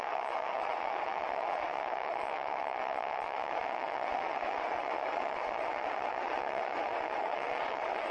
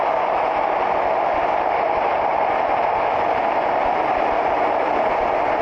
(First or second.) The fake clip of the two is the first